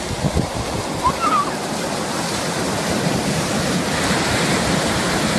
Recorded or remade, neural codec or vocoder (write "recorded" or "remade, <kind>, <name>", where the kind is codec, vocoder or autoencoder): recorded